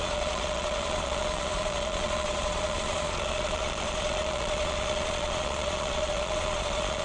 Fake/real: fake